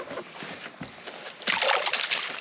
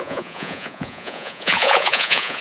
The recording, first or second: first